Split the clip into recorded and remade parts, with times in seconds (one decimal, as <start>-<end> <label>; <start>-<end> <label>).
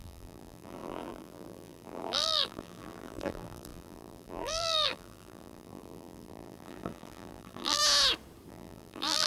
0.0-7.8 remade; 7.8-8.5 recorded; 8.5-9.3 remade